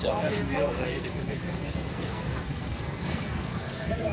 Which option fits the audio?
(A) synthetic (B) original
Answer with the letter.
A